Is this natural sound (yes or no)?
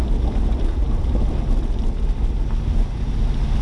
yes